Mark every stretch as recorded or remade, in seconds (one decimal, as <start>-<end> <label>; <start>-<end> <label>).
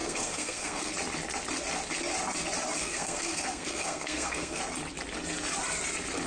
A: 0.0-0.9 remade; 0.9-2.8 recorded; 2.8-4.6 remade; 4.6-6.3 recorded